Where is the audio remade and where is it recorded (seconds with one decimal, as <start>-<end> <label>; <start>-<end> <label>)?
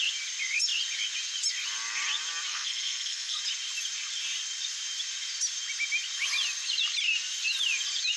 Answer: 0.0-2.5 recorded; 2.5-3.4 remade; 3.4-8.2 recorded